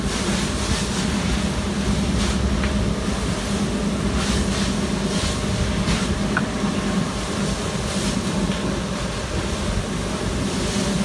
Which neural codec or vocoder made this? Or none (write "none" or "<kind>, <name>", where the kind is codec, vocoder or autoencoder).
none